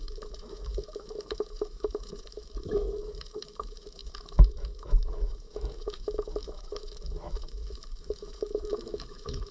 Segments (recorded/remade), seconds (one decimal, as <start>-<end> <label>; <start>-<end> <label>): 0.0-9.5 remade